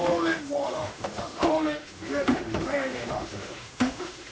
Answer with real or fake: fake